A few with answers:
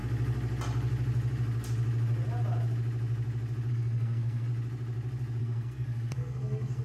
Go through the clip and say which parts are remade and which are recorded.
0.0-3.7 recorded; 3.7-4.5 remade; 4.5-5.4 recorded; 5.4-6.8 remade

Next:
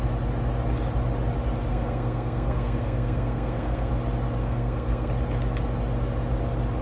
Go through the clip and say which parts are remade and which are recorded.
0.0-1.7 recorded; 1.7-3.9 remade; 3.9-4.4 recorded; 4.4-5.1 remade; 5.1-6.8 recorded